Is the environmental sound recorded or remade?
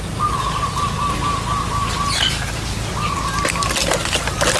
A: recorded